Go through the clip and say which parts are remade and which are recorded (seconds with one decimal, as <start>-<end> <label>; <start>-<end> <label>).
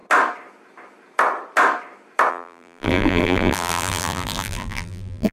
0.0-2.3 recorded; 2.3-5.3 remade